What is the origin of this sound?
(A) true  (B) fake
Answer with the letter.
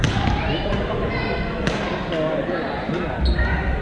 A